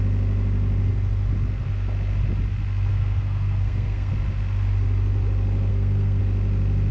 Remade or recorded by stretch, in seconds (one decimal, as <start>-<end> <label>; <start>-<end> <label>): 0.0-2.9 recorded; 2.9-4.1 remade; 4.1-5.7 recorded; 5.7-6.2 remade; 6.2-6.9 recorded